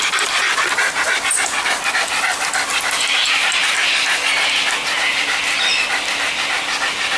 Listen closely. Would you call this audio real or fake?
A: real